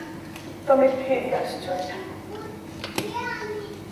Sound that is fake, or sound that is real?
real